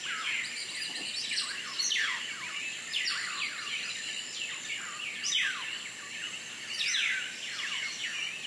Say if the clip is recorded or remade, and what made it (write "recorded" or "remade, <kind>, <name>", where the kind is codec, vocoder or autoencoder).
recorded